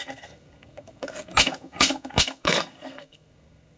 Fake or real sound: fake